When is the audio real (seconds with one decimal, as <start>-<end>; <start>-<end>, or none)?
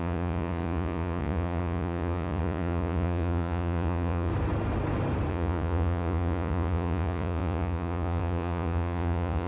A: 4.3-5.3